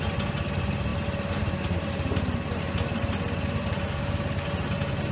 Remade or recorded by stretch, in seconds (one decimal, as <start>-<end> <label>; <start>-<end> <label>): 0.0-5.1 recorded